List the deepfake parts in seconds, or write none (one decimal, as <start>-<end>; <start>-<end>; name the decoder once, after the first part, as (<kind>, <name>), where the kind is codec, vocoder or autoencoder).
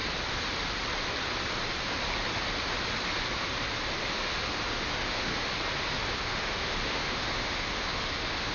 4.0-5.3 (autoencoder, DAC-VAE); 6.1-8.5